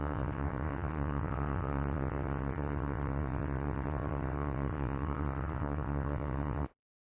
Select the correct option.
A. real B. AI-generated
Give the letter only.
B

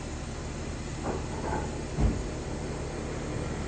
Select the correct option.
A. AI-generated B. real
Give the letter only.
B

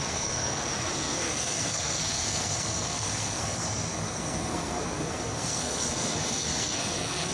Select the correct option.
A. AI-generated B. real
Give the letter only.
A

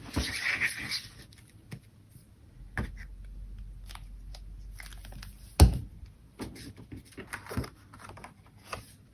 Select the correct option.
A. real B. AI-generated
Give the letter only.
A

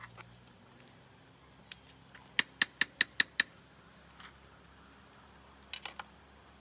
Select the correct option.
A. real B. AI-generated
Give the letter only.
A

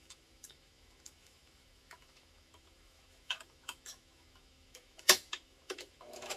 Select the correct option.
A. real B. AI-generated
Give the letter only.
B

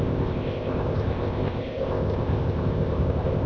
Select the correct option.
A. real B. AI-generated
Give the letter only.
B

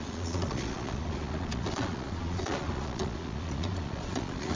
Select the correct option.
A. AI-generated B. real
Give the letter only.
A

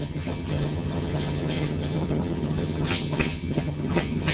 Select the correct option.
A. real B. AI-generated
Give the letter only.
B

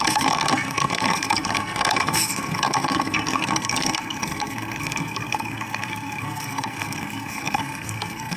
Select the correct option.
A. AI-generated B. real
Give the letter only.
A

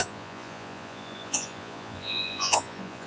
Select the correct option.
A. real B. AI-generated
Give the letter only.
B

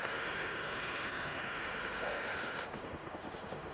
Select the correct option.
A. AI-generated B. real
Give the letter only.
A